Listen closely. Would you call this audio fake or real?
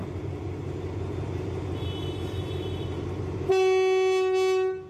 real